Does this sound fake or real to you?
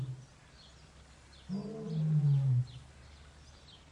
real